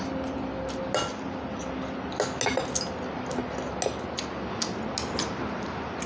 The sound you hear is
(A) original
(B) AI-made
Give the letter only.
A